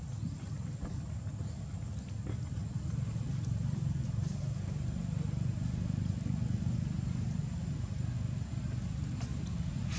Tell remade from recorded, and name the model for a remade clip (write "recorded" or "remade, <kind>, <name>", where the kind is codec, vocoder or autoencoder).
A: recorded